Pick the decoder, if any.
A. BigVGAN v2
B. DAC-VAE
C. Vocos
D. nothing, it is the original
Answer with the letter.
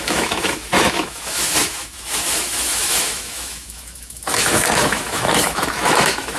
B